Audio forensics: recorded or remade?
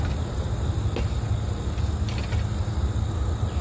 recorded